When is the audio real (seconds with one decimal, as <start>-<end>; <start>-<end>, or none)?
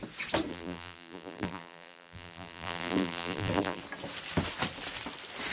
0.0-0.5; 3.8-5.5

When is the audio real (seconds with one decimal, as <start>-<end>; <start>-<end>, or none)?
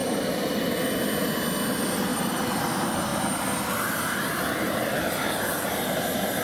1.0-2.1; 2.6-6.4